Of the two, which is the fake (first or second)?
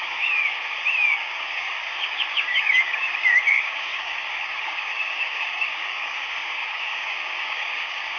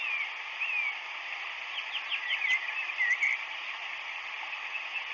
first